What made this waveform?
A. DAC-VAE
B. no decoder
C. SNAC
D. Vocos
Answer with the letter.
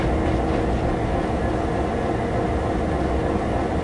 B